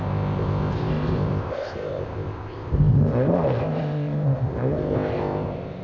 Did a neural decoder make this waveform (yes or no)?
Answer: yes